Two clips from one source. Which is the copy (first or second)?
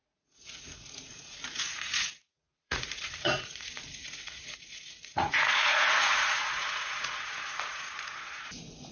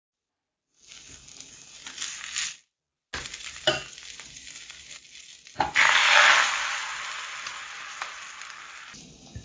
first